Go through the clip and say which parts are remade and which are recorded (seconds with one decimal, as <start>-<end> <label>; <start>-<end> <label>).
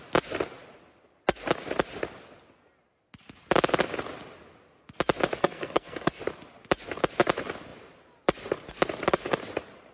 0.0-5.4 recorded; 5.4-6.2 remade; 6.2-9.9 recorded